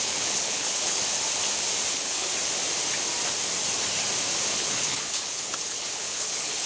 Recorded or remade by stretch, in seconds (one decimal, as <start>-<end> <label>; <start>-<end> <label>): 0.0-1.0 remade; 1.0-1.9 recorded; 1.9-2.3 remade; 2.3-4.6 recorded; 4.6-6.7 remade